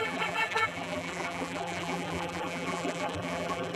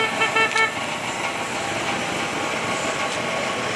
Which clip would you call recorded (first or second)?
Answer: second